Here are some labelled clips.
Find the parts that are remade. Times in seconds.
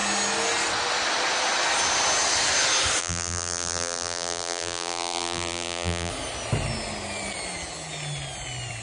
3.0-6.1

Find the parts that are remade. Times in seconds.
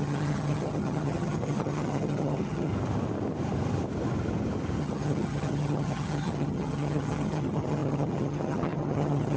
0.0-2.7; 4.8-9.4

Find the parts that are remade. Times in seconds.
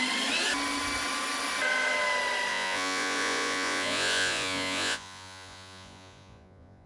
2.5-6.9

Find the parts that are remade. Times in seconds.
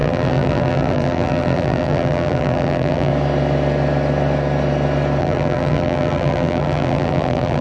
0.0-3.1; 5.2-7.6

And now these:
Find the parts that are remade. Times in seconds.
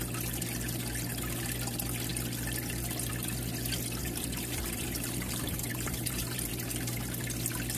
4.0-6.5